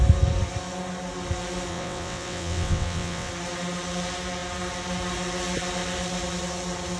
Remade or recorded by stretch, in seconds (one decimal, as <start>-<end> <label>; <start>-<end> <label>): 0.0-1.7 recorded; 1.7-3.3 remade; 3.3-7.0 recorded

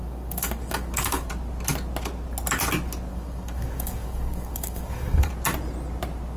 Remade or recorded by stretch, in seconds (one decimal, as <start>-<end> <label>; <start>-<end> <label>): 0.0-1.3 remade; 1.3-3.1 recorded; 3.1-5.3 remade; 5.3-6.4 recorded

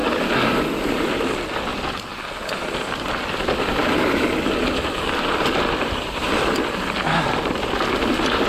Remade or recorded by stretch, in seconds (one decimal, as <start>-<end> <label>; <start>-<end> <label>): 0.0-1.7 recorded; 1.7-6.8 remade; 6.8-8.5 recorded

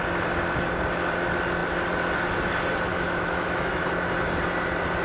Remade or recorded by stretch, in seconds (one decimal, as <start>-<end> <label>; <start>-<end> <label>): 0.0-2.9 recorded; 2.9-3.8 remade; 3.8-5.0 recorded

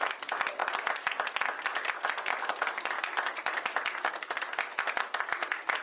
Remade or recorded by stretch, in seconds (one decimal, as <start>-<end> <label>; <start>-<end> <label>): 0.0-5.8 recorded

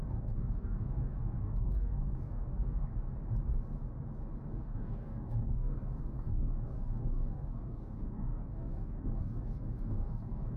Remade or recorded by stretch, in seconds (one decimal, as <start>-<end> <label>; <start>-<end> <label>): 0.0-2.9 remade; 2.9-4.5 recorded; 4.5-10.6 remade

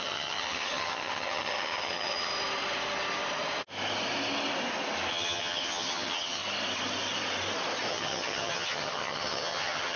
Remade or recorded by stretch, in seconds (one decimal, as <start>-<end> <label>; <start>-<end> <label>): 0.0-2.3 remade; 2.3-5.1 recorded; 5.1-6.4 remade; 6.4-7.9 recorded; 7.9-10.0 remade

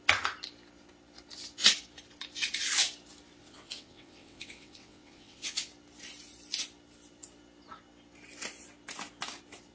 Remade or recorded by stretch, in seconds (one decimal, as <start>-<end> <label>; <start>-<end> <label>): 0.0-3.4 recorded; 3.4-5.7 remade; 5.7-9.7 recorded